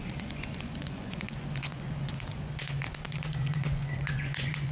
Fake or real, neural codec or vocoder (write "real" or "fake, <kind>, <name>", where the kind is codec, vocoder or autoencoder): fake, vocoder, Vocos